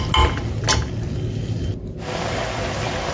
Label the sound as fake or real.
real